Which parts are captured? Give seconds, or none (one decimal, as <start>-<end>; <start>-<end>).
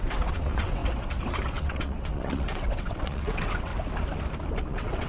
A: 0.8-1.5; 3.7-4.6